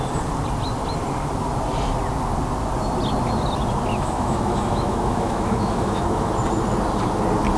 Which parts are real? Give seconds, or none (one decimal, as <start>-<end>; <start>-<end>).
0.0-3.9; 6.3-7.6